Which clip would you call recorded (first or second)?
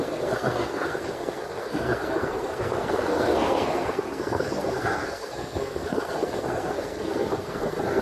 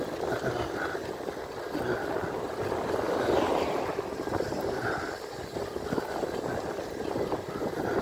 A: second